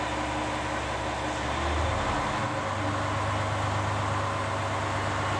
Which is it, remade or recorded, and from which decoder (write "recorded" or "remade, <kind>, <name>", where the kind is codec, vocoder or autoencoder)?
recorded